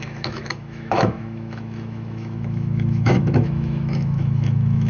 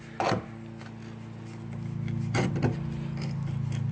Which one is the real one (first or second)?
second